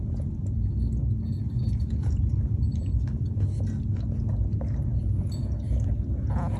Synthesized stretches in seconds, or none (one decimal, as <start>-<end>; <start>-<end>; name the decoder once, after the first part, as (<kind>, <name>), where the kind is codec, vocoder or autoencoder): 1.6-2.3 (vocoder, Vocos)